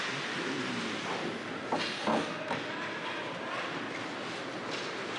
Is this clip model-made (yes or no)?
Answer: no